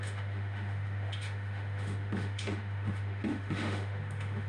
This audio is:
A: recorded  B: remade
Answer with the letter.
B